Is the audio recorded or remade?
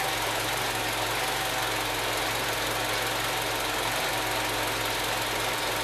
recorded